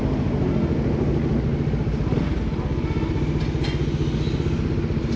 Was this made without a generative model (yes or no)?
yes